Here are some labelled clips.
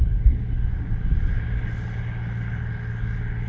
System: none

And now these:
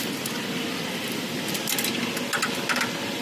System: none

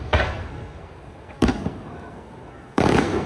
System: codec, SNAC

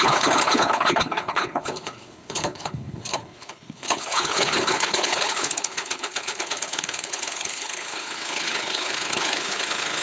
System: codec, HILCodec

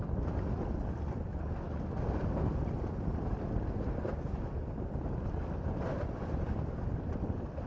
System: none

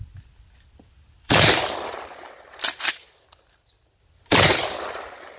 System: vocoder, BigVGAN v2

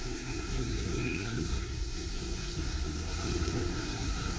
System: codec, SNAC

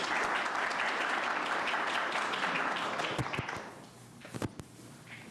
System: none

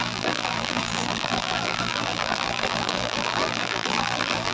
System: vocoder, BigVGAN v2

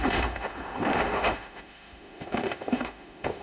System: autoencoder, DAC-VAE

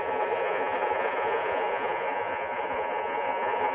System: vocoder, Vocos